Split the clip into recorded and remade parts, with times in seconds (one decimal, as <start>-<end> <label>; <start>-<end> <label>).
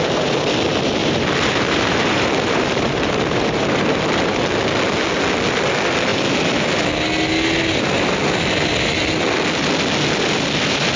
0.0-1.0 recorded; 1.0-4.0 remade; 4.0-11.0 recorded